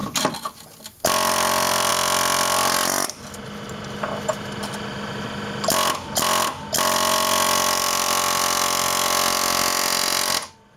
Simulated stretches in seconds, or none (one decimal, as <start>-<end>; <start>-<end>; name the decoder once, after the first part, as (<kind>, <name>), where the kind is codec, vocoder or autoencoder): none